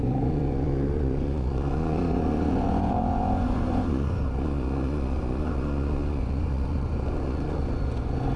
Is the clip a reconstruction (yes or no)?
yes